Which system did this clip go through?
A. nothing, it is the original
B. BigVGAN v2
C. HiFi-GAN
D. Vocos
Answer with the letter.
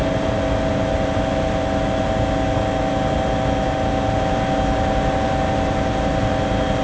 A